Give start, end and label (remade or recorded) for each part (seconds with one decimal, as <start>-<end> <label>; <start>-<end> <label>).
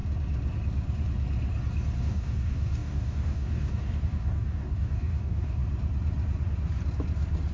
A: 0.0-2.0 recorded; 2.0-5.6 remade; 5.6-7.5 recorded